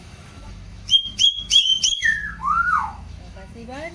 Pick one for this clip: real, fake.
fake